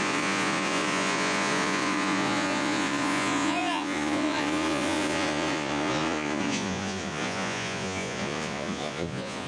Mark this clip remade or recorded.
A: remade